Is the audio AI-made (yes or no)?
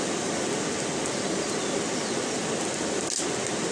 no